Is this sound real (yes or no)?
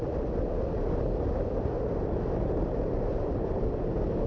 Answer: yes